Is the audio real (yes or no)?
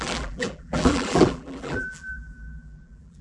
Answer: no